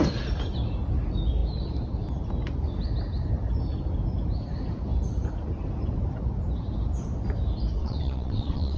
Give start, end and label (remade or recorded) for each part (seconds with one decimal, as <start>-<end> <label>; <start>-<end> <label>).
0.0-7.8 recorded; 7.8-8.8 remade